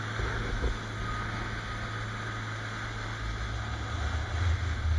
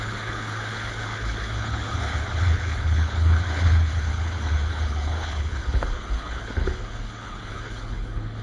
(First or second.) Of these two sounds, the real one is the first